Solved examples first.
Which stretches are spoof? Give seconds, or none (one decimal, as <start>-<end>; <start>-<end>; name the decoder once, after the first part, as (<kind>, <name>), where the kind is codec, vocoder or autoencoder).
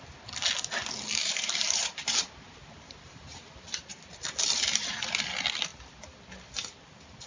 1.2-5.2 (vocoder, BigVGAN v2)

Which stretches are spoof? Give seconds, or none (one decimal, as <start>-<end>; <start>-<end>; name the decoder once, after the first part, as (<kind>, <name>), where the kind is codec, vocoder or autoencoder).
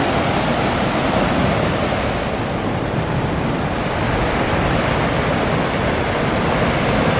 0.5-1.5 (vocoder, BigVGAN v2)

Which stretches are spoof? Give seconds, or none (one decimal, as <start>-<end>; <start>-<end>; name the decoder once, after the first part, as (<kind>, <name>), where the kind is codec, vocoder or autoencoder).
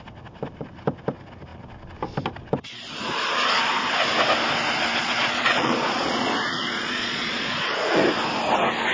5.0-8.0 (vocoder, Vocos)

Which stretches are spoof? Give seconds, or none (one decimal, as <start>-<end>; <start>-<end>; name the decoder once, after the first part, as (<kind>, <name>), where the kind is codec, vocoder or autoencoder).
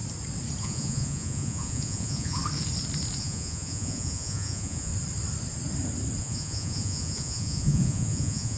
0.6-2.4 (vocoder, Vocos); 3.2-4.9; 6.2-8.6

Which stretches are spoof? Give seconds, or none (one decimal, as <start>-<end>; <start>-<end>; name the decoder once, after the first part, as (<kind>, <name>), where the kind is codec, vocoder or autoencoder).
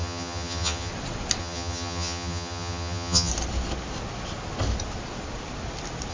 0.0-0.9 (vocoder, HiFi-GAN); 1.4-3.3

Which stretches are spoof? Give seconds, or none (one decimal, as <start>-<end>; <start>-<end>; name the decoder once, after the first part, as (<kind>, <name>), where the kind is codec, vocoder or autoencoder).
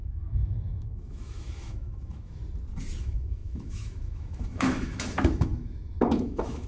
0.0-2.4 (autoencoder, DAC-VAE); 3.0-6.7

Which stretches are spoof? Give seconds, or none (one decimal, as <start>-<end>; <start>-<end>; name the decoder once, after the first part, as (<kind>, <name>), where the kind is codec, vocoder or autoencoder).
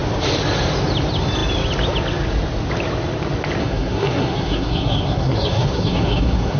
3.6-6.6 (codec, SNAC)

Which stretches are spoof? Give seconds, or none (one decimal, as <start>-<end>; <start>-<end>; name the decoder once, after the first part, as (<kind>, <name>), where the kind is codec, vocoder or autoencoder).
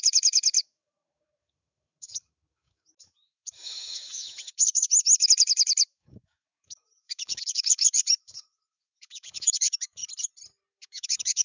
0.0-10.0 (autoencoder, DAC-VAE); 10.7-11.4